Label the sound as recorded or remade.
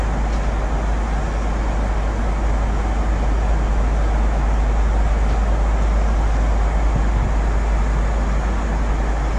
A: recorded